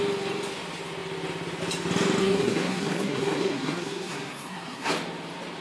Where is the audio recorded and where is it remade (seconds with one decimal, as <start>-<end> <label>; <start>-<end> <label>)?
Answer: 0.0-2.2 recorded; 2.2-4.9 remade; 4.9-5.6 recorded